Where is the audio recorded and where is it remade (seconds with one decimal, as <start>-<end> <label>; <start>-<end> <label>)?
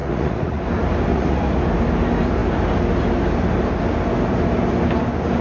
0.0-0.6 remade; 0.6-1.1 recorded; 1.1-1.6 remade; 1.6-5.4 recorded